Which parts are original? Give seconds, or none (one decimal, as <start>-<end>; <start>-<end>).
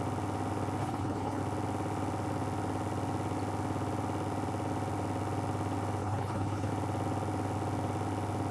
0.0-0.8; 1.4-6.0; 6.7-8.5